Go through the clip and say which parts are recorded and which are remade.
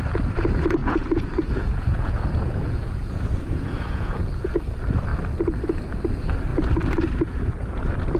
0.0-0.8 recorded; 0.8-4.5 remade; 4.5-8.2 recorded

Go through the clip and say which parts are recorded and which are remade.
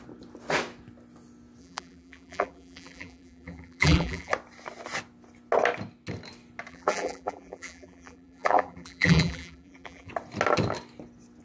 0.0-1.6 recorded; 1.6-4.3 remade; 4.3-6.7 recorded; 6.7-10.1 remade; 10.1-11.4 recorded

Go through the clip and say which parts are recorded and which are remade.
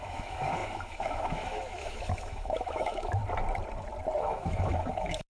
0.0-3.2 remade; 3.2-4.2 recorded; 4.2-5.3 remade